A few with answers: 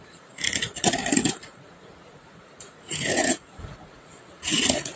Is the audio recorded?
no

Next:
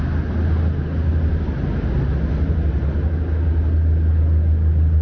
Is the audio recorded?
yes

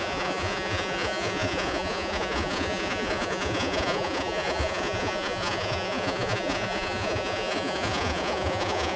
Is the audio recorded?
no